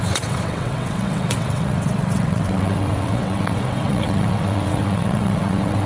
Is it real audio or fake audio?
fake